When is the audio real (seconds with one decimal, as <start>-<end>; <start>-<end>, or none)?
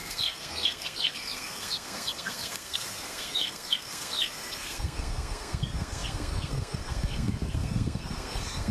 none